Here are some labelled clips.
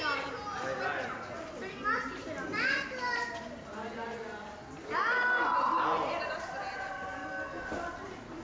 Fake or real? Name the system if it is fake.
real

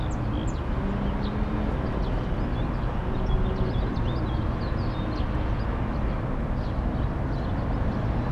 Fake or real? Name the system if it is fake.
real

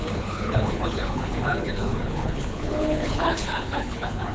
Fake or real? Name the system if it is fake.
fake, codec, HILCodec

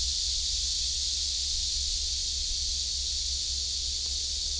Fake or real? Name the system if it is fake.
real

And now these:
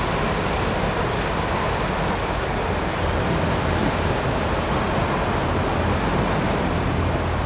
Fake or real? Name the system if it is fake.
real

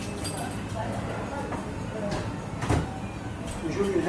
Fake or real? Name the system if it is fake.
real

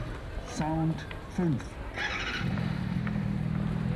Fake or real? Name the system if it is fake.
real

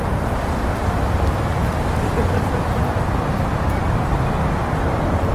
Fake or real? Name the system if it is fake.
fake, vocoder, BigVGAN v2